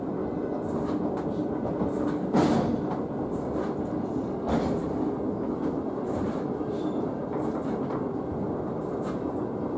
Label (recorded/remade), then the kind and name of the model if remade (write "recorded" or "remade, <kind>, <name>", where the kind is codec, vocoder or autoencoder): recorded